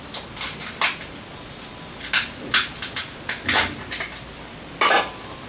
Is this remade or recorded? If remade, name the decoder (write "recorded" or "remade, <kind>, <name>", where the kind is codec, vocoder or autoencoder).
recorded